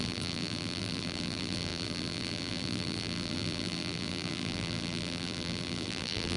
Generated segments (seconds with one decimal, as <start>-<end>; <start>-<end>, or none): 0.0-6.4